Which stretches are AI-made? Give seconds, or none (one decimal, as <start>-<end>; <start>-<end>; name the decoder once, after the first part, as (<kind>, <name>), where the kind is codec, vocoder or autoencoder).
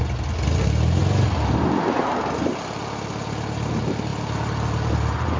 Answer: none